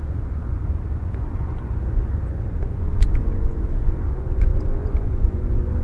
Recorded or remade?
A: remade